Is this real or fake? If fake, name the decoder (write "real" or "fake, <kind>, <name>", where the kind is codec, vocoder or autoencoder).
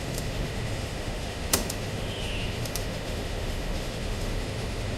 fake, autoencoder, DAC-VAE